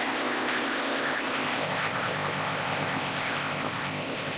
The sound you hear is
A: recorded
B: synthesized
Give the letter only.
B